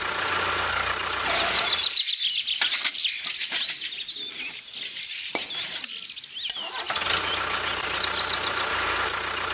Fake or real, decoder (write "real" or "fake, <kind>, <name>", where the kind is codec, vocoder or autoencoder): real